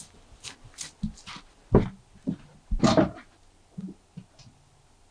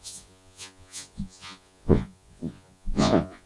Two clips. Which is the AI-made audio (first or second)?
second